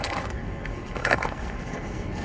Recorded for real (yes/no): no